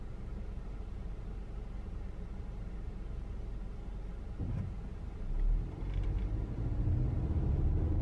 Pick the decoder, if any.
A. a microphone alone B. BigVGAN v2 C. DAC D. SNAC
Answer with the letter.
A